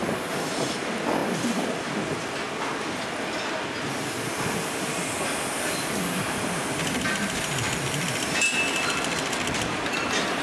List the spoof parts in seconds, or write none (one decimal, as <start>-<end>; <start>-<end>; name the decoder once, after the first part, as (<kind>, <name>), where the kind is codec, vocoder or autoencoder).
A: none